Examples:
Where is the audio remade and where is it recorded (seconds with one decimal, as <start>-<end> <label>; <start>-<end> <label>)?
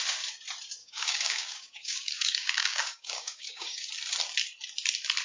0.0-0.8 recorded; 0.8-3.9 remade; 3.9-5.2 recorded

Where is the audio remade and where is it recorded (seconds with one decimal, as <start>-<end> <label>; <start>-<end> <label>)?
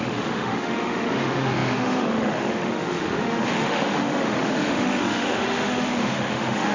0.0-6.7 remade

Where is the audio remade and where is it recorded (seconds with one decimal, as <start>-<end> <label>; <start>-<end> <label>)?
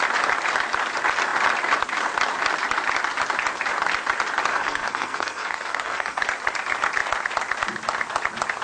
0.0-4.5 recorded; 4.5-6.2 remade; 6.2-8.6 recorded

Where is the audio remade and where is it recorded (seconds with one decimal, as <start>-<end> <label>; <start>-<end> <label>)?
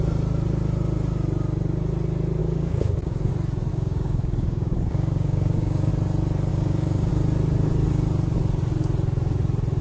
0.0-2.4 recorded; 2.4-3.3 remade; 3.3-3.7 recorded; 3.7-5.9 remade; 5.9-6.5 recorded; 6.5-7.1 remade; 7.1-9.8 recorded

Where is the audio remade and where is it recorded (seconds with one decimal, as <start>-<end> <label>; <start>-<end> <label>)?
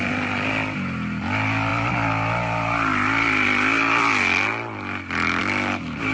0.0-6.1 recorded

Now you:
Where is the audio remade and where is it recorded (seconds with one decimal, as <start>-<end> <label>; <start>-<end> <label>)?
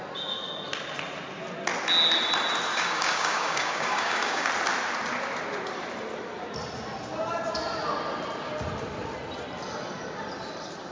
0.0-2.7 recorded; 2.7-4.5 remade; 4.5-10.9 recorded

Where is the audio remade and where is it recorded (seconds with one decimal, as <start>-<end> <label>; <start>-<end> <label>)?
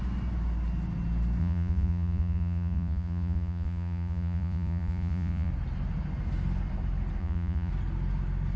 0.0-1.4 recorded; 1.4-5.5 remade; 5.5-7.2 recorded; 7.2-7.7 remade; 7.7-8.6 recorded